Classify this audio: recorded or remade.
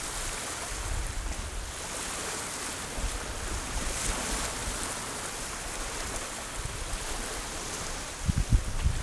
recorded